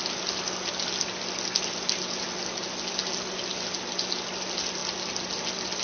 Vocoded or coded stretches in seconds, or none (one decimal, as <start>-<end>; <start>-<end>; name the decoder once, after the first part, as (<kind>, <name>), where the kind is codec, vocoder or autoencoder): none

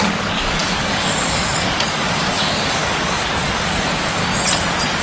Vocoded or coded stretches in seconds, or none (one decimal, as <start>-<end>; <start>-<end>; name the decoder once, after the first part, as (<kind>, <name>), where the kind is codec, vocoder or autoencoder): 0.0-4.2 (codec, DAC)